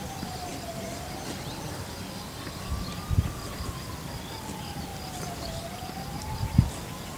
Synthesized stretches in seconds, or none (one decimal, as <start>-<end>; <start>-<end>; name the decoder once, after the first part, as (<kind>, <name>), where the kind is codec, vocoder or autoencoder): none